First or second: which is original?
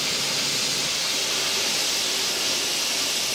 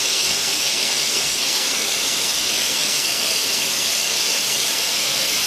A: first